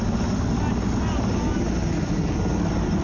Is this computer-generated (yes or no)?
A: no